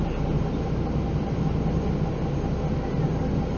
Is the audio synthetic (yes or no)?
no